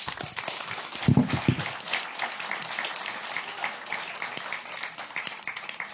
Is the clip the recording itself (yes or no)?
yes